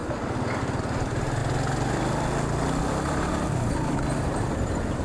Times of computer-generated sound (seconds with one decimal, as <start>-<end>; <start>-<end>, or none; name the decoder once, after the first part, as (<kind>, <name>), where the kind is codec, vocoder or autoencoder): 0.8-1.4 (vocoder, BigVGAN v2); 2.9-5.0